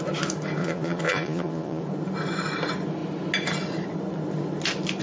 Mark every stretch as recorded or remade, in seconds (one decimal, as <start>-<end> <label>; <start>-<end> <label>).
0.0-0.6 recorded; 0.6-1.8 remade; 1.8-5.0 recorded